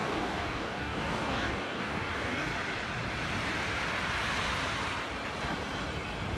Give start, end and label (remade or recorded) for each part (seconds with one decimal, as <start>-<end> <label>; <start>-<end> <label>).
0.0-2.5 remade; 2.5-6.4 recorded